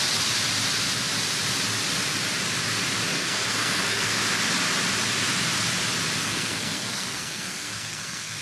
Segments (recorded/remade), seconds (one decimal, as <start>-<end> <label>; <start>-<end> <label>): 0.0-3.1 recorded; 3.1-4.2 remade; 4.2-6.2 recorded; 6.2-8.4 remade